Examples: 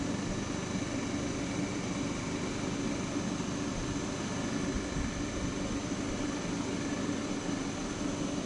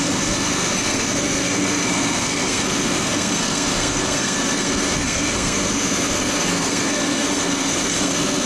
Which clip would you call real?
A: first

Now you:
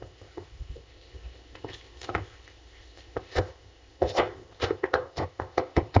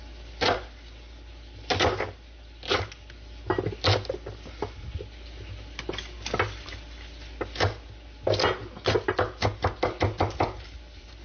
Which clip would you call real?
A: second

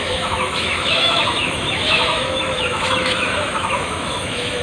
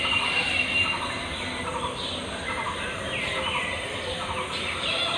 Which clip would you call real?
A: second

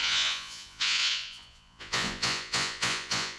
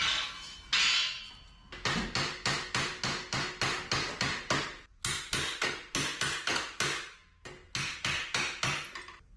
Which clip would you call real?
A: second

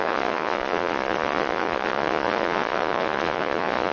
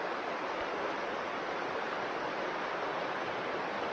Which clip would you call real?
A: second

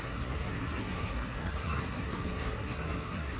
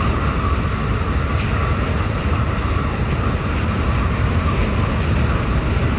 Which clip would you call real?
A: second